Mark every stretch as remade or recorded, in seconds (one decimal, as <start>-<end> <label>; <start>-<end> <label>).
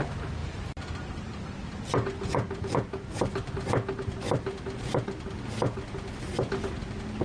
0.0-7.2 recorded